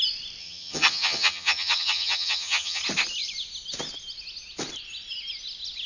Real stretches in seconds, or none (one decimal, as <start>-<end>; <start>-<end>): 0.0-0.4; 2.8-5.9